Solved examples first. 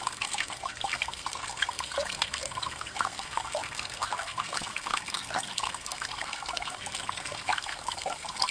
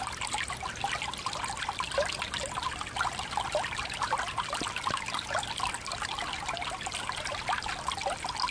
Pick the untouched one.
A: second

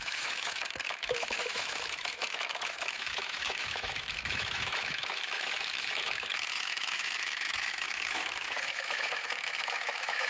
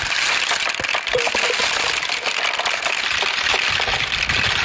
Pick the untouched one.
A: second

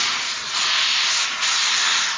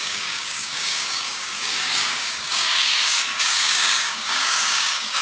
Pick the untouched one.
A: first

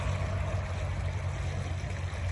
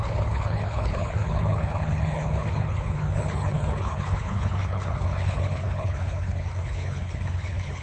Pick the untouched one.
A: first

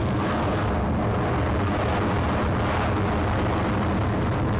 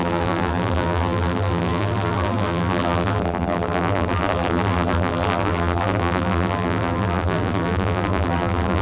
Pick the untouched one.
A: first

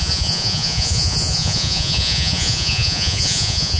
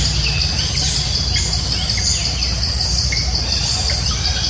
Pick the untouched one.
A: second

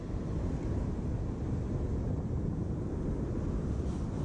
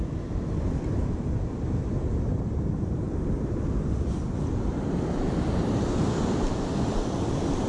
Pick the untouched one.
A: first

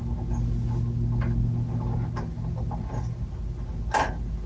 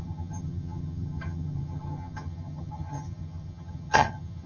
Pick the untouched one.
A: first